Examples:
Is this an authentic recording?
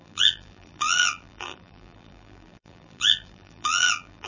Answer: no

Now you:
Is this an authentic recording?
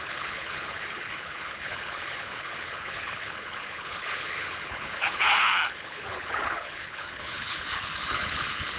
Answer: no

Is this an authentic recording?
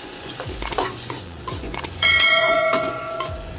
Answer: no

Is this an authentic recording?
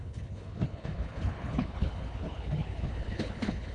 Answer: no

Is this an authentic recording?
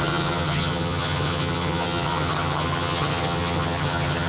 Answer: no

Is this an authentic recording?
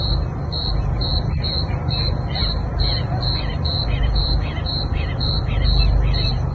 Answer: no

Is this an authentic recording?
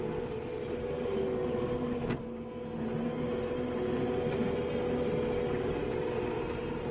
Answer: yes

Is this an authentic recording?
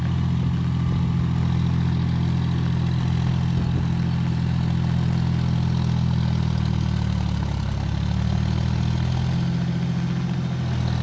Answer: yes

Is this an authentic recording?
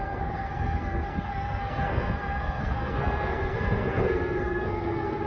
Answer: no